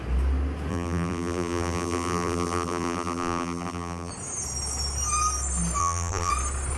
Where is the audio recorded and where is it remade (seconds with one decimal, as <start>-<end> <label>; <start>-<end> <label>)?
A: 0.0-0.7 recorded; 0.7-4.1 remade; 4.1-5.8 recorded; 5.8-6.3 remade; 6.3-6.8 recorded